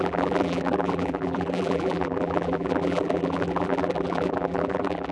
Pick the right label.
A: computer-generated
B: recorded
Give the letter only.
A